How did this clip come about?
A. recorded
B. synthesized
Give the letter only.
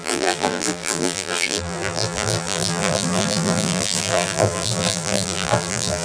B